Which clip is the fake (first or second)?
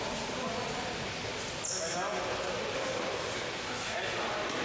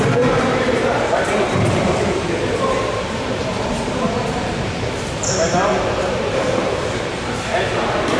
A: second